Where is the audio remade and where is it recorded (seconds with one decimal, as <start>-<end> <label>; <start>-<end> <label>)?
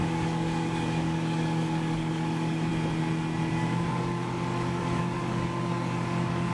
0.0-2.7 remade; 2.7-3.9 recorded; 3.9-6.5 remade